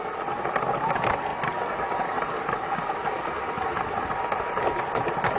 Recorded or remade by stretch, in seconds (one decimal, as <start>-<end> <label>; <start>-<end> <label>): 0.0-5.4 recorded